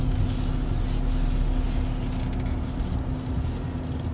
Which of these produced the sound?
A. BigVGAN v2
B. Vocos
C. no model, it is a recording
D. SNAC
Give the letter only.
C